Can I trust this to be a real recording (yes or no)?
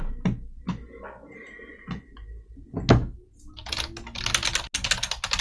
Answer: yes